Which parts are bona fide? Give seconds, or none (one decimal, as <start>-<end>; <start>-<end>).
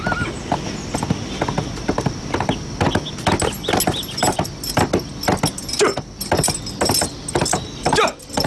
0.0-8.5